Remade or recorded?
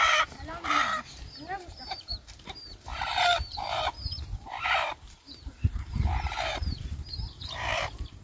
remade